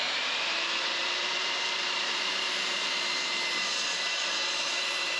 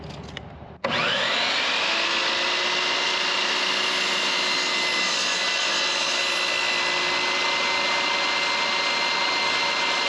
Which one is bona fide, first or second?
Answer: second